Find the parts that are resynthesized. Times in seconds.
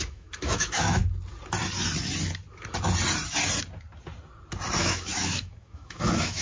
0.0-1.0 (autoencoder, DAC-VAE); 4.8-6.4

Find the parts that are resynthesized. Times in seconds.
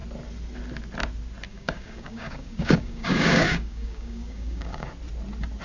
1.5-4.9 (codec, DAC)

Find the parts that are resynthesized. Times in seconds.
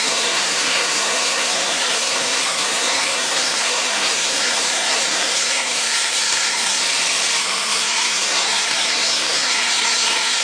0.0-6.8 (codec, SNAC); 7.4-10.4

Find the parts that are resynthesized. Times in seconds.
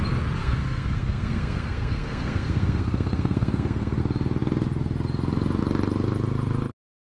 0.4-4.0 (codec, SNAC)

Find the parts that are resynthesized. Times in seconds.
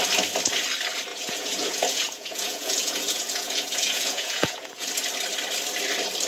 1.1-4.9 (vocoder, Vocos)